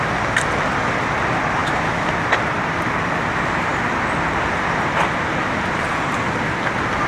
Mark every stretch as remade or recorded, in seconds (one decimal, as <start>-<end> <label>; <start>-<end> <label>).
0.0-1.6 recorded; 1.6-2.1 remade; 2.1-7.1 recorded